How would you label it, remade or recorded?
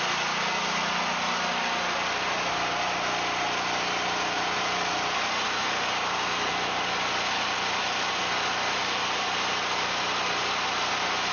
recorded